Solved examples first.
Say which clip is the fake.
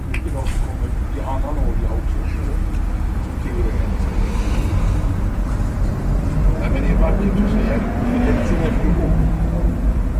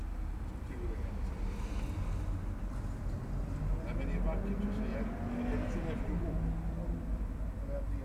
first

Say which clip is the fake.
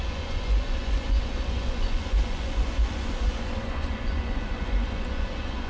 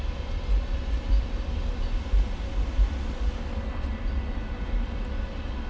first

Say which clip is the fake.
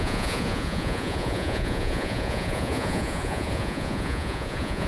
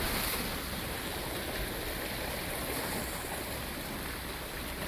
first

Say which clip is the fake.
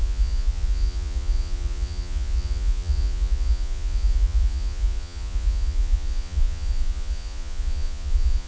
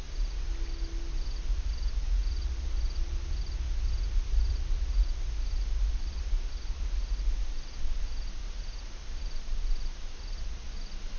first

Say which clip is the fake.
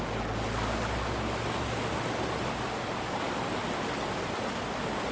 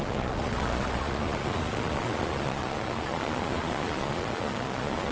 second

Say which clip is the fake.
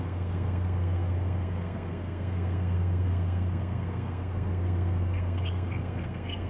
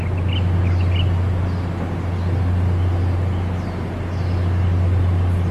first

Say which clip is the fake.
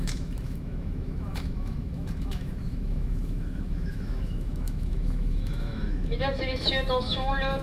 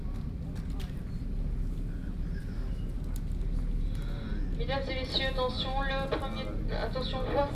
first